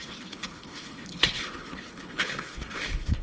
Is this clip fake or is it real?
fake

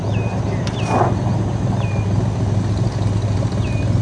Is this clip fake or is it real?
real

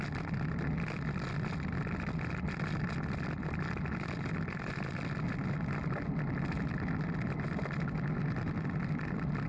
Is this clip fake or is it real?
real